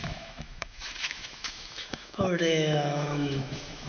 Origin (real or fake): fake